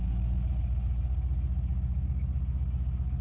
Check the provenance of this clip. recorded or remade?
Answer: recorded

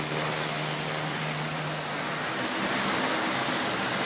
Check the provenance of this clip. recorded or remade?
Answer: recorded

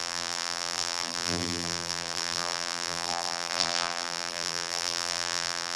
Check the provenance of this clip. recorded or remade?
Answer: remade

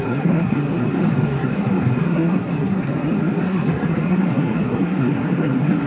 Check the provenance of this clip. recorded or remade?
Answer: remade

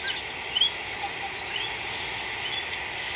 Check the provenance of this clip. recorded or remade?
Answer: recorded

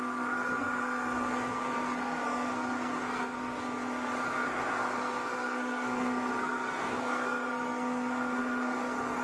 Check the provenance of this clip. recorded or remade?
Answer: remade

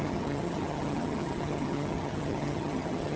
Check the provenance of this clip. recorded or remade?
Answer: remade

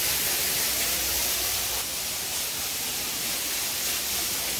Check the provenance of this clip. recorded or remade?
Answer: recorded